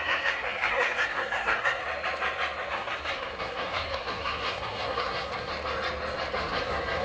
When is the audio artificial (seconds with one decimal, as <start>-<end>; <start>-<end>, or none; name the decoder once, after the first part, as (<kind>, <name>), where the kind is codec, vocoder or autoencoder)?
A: 0.0-1.8 (codec, SNAC); 2.7-5.5; 6.3-7.0